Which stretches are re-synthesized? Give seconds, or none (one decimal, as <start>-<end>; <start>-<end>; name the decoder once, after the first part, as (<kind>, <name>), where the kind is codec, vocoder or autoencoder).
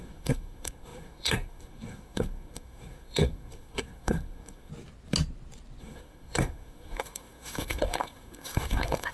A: 0.0-4.7 (codec, SNAC); 5.8-9.1